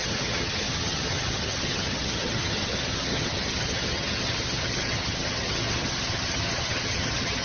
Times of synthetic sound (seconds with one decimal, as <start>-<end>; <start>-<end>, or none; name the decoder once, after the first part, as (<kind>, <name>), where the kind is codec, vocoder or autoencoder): 0.0-7.4 (vocoder, HiFi-GAN)